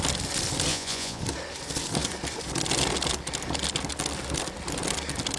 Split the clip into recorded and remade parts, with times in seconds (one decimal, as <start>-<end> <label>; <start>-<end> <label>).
0.0-0.7 recorded; 0.7-1.2 remade; 1.2-5.4 recorded

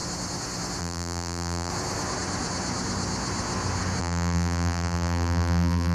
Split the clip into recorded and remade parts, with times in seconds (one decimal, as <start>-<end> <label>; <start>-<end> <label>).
0.0-0.8 recorded; 0.8-1.7 remade; 1.7-4.0 recorded; 4.0-5.9 remade